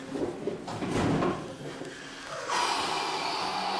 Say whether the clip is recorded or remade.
recorded